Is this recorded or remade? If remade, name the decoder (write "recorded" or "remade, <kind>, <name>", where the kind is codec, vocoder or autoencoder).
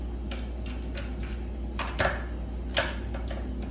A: recorded